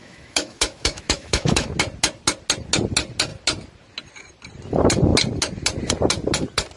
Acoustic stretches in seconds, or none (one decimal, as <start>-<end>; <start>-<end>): 1.7-6.8